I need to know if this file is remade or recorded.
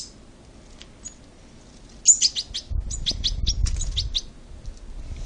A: recorded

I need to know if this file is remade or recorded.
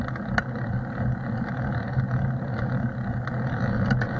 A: recorded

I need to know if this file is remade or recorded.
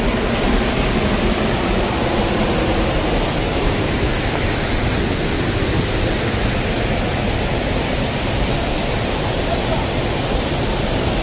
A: recorded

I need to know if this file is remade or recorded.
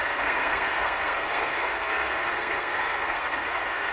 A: remade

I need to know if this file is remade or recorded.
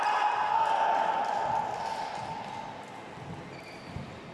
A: recorded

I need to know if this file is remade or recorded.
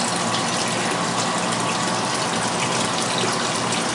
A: recorded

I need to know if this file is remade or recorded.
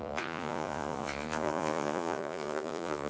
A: remade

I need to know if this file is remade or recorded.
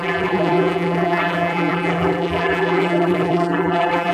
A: remade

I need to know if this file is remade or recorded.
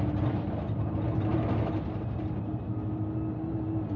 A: recorded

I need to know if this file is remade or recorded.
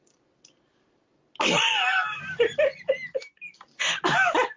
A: recorded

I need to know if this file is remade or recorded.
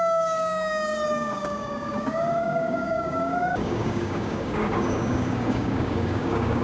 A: remade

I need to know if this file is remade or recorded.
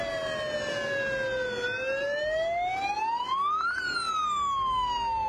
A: recorded